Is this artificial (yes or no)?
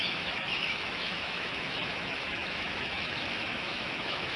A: yes